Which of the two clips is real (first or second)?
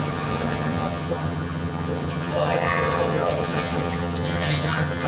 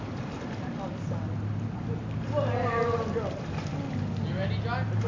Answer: second